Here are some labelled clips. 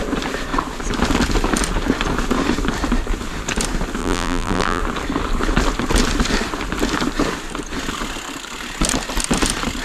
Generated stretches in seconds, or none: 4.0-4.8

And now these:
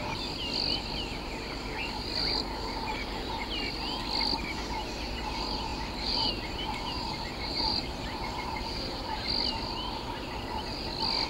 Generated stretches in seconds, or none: 2.2-3.5; 5.7-9.3

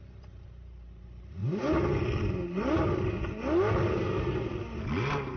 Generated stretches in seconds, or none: 0.0-1.4; 4.6-5.4

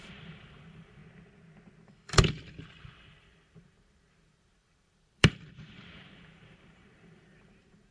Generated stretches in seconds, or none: 0.0-1.0; 2.8-7.9

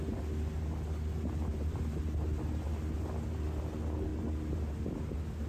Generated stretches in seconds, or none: 1.5-2.2

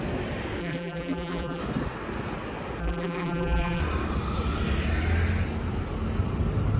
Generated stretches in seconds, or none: 0.6-1.6; 2.8-3.8

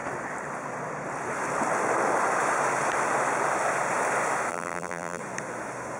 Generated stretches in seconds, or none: 4.5-5.2